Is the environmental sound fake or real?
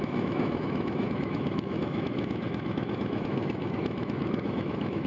fake